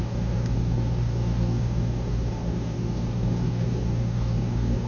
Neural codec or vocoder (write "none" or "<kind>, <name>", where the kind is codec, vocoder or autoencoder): codec, DAC